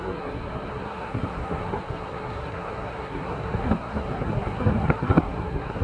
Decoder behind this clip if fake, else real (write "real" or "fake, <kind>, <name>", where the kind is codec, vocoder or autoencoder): fake, codec, SNAC